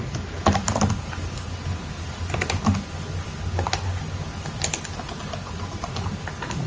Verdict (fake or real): real